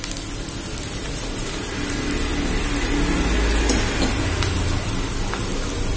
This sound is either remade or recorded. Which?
recorded